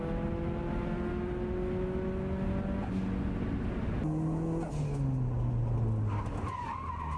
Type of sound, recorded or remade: recorded